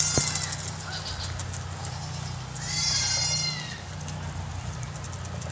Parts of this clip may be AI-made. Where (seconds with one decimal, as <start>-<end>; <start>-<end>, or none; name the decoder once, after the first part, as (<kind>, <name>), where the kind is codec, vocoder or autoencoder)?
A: none